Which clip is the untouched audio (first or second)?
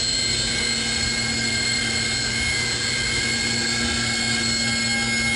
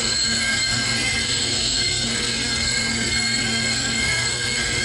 first